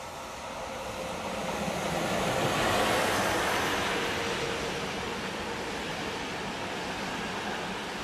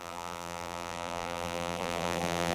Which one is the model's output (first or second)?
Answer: second